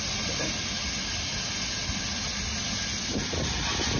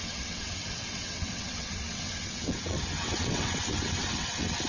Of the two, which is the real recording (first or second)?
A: first